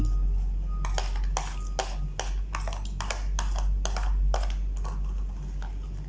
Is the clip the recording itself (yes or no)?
yes